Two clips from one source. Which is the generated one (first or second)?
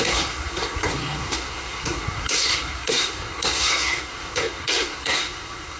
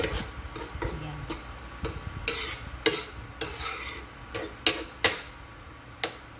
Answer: first